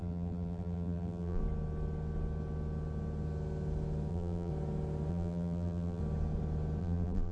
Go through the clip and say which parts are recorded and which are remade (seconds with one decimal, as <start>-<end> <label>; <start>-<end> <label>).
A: 0.0-1.4 remade; 1.4-4.1 recorded; 4.1-4.5 remade; 4.5-5.1 recorded; 5.1-6.0 remade; 6.0-6.8 recorded; 6.8-7.3 remade